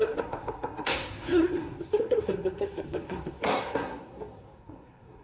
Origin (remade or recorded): remade